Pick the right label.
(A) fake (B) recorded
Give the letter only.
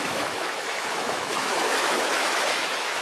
A